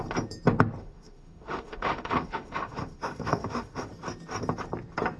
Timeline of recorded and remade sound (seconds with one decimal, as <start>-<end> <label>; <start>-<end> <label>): 0.0-0.8 recorded; 0.8-3.9 remade; 3.9-5.2 recorded